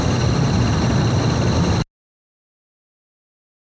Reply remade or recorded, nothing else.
recorded